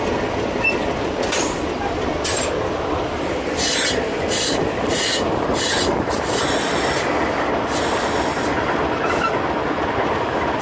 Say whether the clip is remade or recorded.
recorded